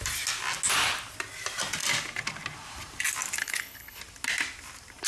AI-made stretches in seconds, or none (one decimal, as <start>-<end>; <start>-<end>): 3.4-4.0